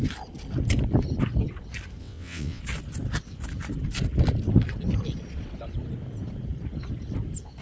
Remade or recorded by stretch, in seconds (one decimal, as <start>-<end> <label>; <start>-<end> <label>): 0.0-2.0 recorded; 2.0-2.6 remade; 2.6-7.6 recorded